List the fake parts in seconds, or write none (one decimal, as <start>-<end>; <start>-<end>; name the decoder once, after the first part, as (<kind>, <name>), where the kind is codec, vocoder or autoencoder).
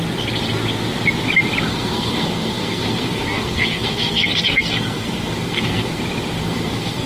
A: 1.7-6.0 (codec, SNAC); 6.4-7.1